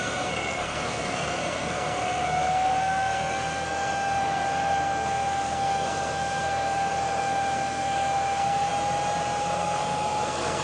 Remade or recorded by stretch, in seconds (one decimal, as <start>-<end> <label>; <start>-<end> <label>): 0.0-8.7 remade; 8.7-9.4 recorded; 9.4-10.6 remade